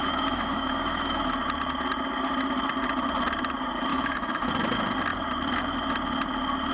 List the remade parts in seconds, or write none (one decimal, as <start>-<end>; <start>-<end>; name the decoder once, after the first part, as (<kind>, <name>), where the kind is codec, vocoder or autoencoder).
0.0-1.2 (autoencoder, DAC-VAE); 3.9-4.5